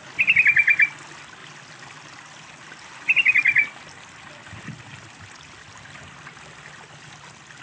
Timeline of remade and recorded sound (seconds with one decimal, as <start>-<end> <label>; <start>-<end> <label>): 0.0-7.6 recorded